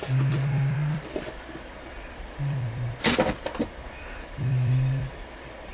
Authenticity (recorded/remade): remade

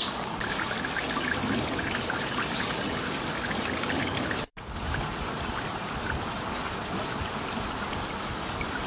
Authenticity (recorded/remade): recorded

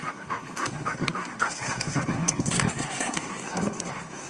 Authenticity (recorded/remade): remade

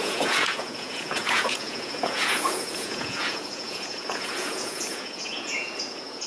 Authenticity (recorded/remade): remade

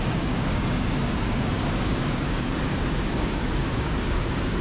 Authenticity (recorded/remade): remade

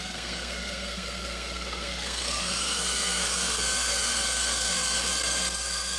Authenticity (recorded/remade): remade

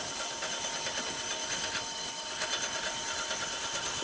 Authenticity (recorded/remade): recorded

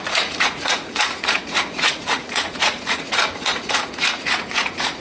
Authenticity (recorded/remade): remade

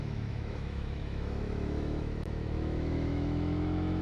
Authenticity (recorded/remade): remade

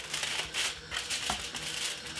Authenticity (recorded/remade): recorded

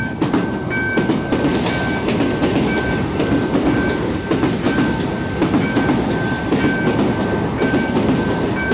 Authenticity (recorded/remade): recorded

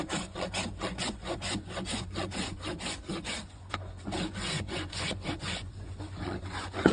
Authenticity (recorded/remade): remade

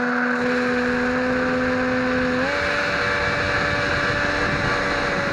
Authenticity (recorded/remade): recorded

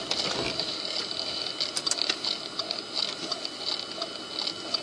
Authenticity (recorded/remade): recorded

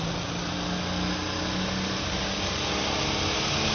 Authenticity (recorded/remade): recorded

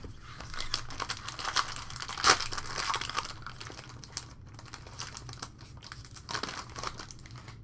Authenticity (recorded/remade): recorded